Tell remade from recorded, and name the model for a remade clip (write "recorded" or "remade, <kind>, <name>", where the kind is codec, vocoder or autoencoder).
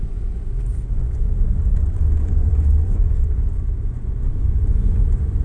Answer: remade, vocoder, Vocos